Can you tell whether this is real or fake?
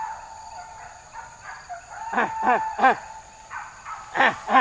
real